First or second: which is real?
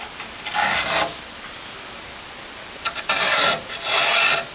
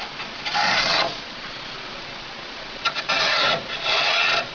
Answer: first